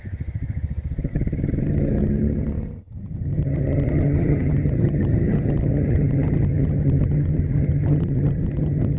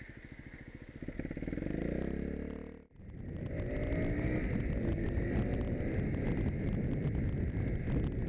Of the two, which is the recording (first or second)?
second